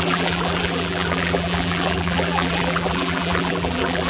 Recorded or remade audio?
remade